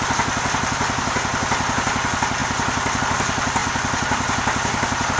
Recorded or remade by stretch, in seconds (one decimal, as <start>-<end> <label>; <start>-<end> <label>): 0.0-5.2 recorded